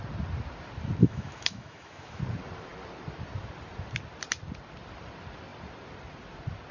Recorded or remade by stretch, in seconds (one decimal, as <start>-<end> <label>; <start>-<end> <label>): 0.0-1.0 recorded; 1.0-2.2 remade; 2.2-6.7 recorded

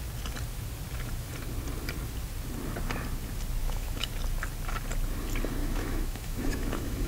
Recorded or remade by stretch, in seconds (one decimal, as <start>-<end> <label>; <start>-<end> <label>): 0.0-3.6 recorded; 3.6-4.1 remade; 4.1-5.6 recorded; 5.6-7.1 remade

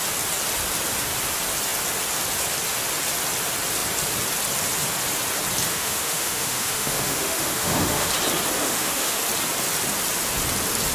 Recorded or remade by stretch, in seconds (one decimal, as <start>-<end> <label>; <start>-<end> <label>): 0.0-5.7 recorded; 5.7-8.1 remade; 8.1-8.6 recorded; 8.6-9.2 remade; 9.2-10.9 recorded

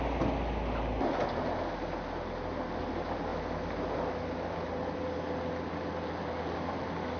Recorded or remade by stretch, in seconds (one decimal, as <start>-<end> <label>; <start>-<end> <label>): 0.0-7.2 recorded

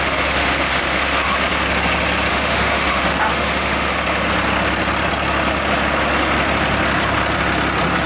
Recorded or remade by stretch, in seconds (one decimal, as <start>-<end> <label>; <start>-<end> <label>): 0.0-1.5 remade; 1.5-2.3 recorded; 2.3-3.9 remade; 3.9-8.1 recorded

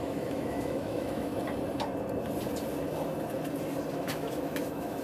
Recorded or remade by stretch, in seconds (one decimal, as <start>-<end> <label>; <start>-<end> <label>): 0.0-1.3 remade; 1.3-3.9 recorded; 3.9-5.0 remade

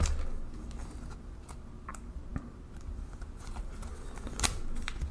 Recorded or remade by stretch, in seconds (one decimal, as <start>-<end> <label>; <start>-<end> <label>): 0.0-5.1 recorded

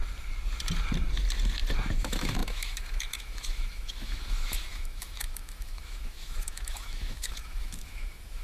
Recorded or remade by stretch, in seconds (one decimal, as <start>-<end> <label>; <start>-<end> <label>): 0.0-2.0 recorded; 2.0-8.4 remade